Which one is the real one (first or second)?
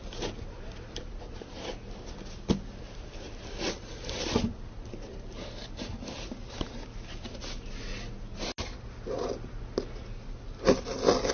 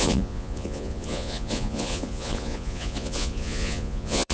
first